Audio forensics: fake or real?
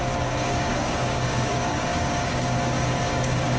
fake